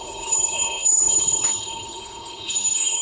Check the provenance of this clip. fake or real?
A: fake